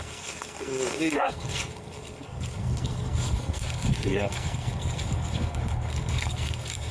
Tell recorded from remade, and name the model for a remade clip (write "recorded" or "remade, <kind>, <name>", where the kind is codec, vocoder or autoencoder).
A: remade, codec, SNAC